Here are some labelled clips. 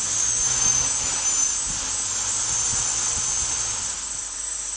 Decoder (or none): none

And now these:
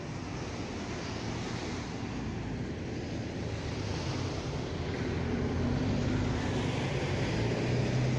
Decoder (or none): none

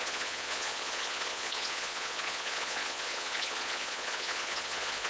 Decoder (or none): vocoder, Vocos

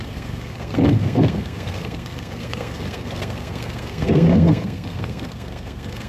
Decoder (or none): codec, SNAC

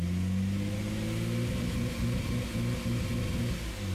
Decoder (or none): none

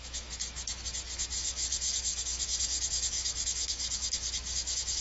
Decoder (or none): autoencoder, DAC-VAE